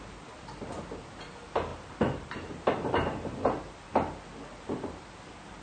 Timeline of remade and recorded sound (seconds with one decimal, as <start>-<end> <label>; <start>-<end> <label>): 0.0-1.7 recorded; 1.7-3.7 remade; 3.7-5.6 recorded